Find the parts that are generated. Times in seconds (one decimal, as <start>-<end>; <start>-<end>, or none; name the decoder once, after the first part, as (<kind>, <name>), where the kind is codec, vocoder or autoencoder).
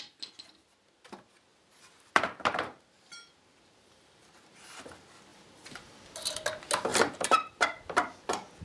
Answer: 1.5-4.6 (vocoder, BigVGAN v2); 5.3-6.0; 6.9-7.5